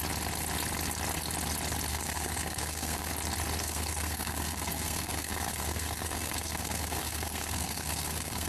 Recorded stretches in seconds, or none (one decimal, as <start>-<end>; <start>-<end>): 0.0-1.9; 3.1-3.6